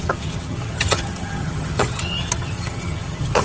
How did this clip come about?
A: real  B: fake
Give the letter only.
B